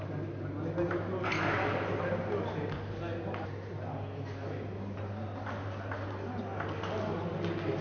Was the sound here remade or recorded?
recorded